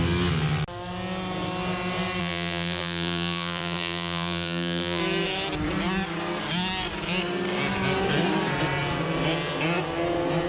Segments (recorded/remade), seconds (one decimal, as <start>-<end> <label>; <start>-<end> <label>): 0.0-2.2 recorded; 2.2-5.0 remade; 5.0-10.5 recorded